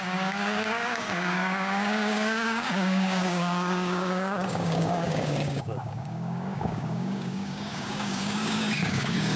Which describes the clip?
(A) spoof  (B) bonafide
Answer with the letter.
A